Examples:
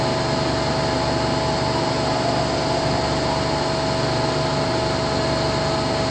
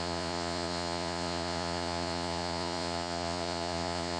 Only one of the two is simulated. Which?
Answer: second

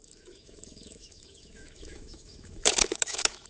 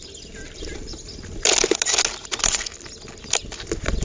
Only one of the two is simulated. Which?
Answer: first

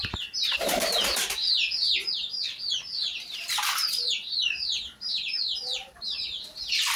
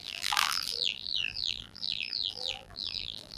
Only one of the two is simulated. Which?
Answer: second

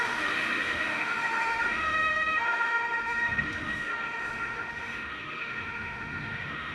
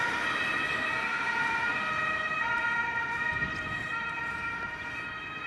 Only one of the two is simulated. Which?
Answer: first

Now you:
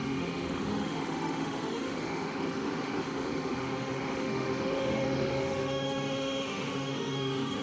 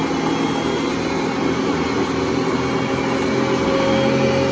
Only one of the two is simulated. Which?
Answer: first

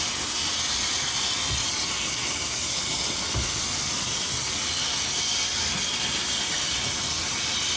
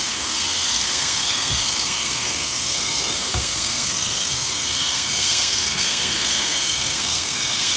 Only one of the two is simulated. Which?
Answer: second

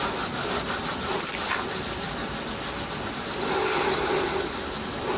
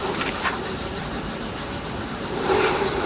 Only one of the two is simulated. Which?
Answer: second